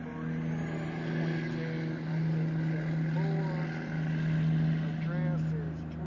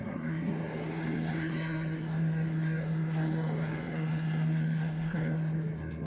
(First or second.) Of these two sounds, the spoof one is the second